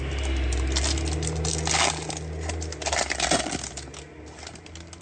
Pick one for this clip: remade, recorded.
recorded